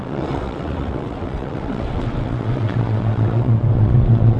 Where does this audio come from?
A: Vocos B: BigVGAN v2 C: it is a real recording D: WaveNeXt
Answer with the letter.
D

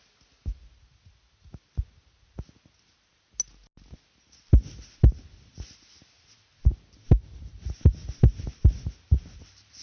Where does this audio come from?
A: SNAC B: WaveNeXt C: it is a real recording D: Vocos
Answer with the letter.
C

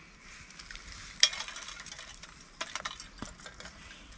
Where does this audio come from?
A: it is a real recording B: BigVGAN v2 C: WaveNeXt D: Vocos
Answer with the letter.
A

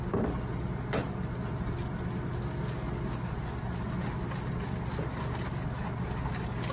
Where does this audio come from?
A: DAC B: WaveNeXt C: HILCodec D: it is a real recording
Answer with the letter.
D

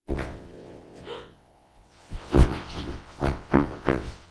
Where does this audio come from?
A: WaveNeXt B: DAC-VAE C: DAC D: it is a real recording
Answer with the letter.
A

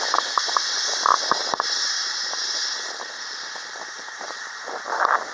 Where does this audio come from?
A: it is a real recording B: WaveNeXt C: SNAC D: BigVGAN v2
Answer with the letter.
A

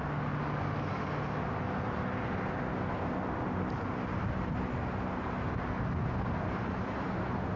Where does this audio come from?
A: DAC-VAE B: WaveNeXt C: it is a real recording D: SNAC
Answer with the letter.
C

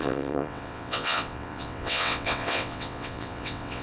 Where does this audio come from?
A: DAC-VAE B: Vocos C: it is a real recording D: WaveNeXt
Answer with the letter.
D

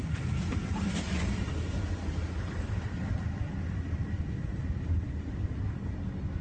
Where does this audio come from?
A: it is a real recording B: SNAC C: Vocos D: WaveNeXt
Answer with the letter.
A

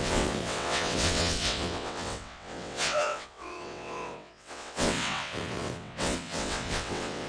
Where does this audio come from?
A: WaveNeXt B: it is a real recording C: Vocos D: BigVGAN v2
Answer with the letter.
A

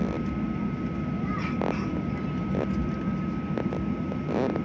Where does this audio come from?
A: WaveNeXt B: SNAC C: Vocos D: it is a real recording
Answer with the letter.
D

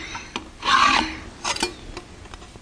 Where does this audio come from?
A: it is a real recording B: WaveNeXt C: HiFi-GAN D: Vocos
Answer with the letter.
A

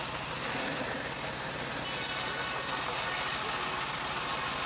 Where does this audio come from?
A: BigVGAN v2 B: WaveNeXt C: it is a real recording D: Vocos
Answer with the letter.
C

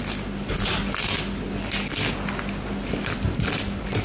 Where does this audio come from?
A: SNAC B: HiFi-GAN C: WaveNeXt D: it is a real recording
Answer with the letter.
D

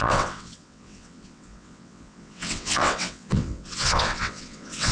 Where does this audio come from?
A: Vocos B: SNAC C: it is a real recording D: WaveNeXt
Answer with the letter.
D